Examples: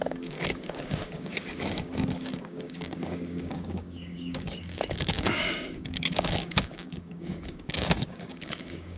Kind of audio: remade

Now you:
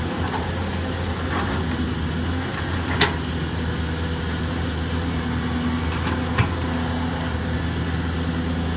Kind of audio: recorded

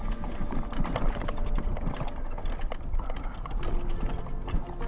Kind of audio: recorded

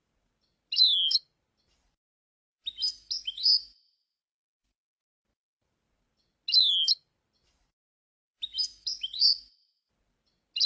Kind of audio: recorded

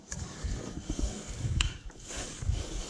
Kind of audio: remade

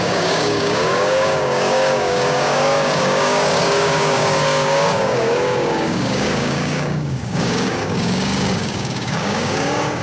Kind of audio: remade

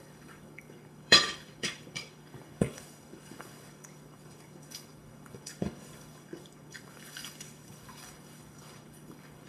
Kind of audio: remade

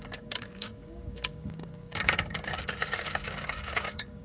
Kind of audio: remade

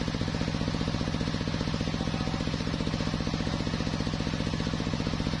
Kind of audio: recorded